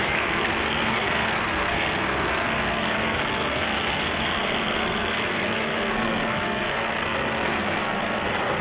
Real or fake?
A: fake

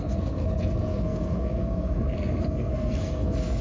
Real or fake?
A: fake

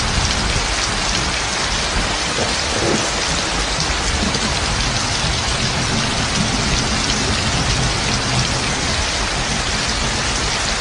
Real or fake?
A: real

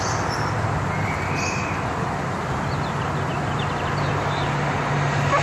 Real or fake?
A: real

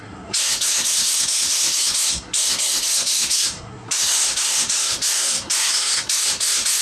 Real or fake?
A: fake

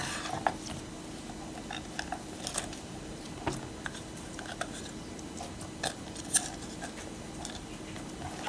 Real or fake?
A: real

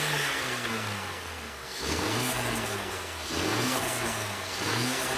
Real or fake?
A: fake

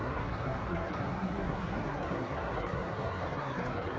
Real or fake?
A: fake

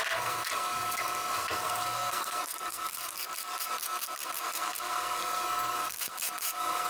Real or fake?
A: fake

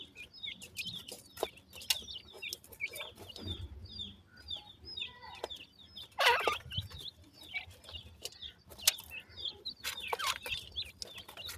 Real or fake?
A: real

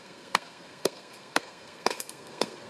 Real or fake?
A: fake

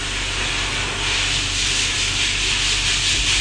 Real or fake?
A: real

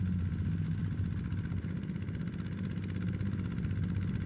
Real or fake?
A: real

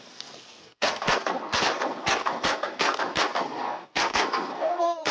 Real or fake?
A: fake